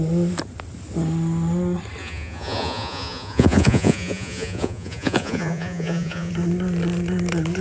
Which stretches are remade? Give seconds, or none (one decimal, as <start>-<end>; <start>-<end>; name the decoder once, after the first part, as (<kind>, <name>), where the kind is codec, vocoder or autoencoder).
2.0-6.3 (vocoder, Vocos)